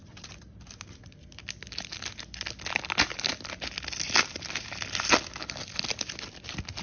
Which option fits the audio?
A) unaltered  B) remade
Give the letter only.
A